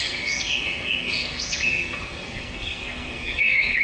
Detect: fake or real fake